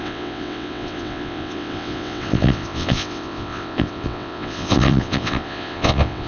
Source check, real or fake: fake